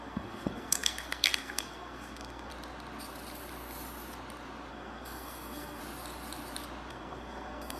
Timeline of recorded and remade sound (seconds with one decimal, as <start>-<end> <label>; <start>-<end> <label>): 0.0-2.5 remade; 2.5-4.7 recorded; 4.7-5.8 remade; 5.8-6.9 recorded; 6.9-7.8 remade